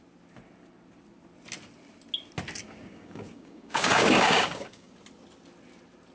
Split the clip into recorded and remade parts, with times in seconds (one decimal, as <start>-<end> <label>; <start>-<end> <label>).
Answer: 0.0-2.6 recorded; 2.6-4.9 remade; 4.9-6.1 recorded